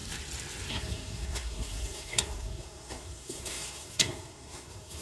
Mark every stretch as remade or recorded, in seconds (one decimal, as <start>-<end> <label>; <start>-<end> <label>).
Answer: 0.0-0.7 recorded; 0.7-5.0 remade